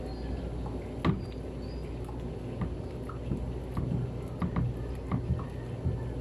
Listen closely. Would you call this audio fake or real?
real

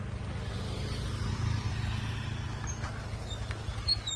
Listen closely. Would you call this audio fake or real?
real